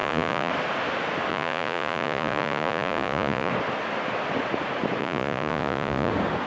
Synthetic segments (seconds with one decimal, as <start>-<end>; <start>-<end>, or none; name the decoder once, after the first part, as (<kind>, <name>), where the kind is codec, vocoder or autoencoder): 0.0-0.5 (vocoder, Vocos); 1.3-3.5; 5.0-6.1